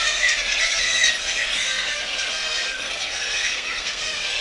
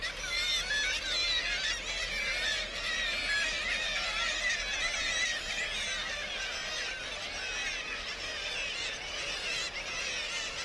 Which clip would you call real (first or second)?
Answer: second